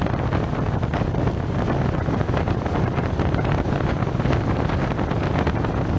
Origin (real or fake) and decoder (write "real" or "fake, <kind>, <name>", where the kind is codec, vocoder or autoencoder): real